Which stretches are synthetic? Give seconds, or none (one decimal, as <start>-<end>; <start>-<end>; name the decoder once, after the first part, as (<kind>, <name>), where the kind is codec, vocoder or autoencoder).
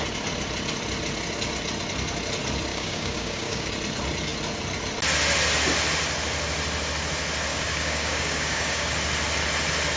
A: 2.7-3.7 (codec, DAC); 7.5-8.9